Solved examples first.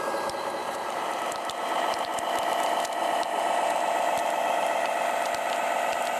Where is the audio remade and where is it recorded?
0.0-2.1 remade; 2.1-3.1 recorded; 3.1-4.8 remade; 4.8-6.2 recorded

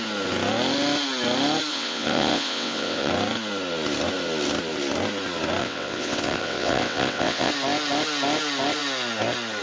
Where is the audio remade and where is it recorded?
0.0-1.7 recorded; 1.7-3.1 remade; 3.1-5.6 recorded; 5.6-7.5 remade; 7.5-9.6 recorded

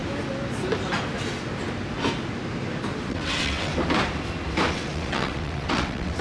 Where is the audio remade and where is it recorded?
0.0-3.1 recorded; 3.1-3.7 remade; 3.7-4.7 recorded; 4.7-6.2 remade